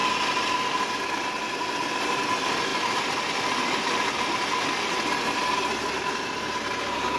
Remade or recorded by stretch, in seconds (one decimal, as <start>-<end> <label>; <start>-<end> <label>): 0.0-7.2 recorded